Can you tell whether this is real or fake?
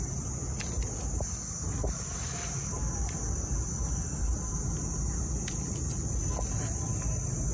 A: real